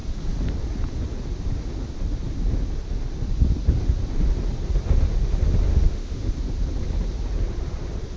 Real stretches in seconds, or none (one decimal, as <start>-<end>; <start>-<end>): 0.0-5.7; 6.3-8.2